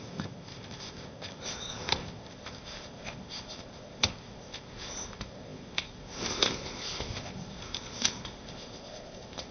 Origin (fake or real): fake